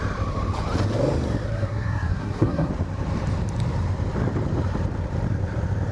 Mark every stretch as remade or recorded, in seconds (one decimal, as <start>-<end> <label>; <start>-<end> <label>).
0.0-1.5 recorded; 1.5-2.7 remade; 2.7-5.9 recorded